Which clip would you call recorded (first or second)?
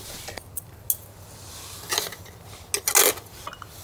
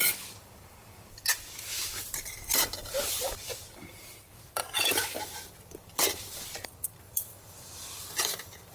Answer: first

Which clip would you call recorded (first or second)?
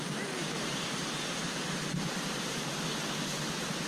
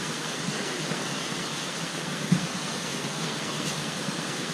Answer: first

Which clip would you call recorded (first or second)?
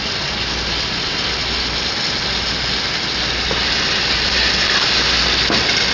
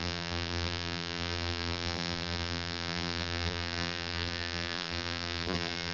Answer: first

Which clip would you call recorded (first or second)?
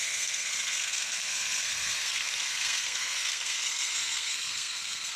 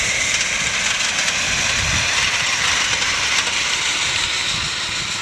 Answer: second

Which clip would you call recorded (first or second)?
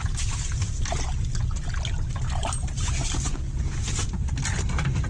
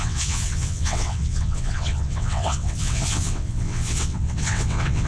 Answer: first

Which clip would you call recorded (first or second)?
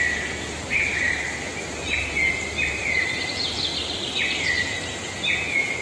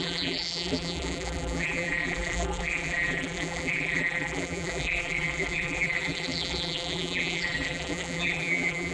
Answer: first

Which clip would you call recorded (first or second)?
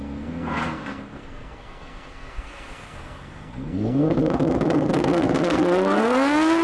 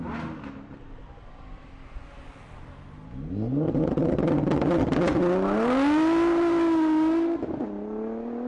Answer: second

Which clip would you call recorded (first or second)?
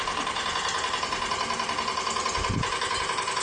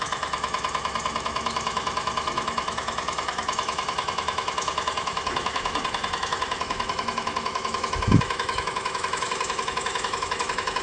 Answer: first